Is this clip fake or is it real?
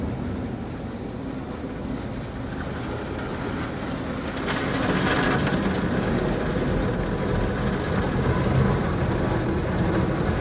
real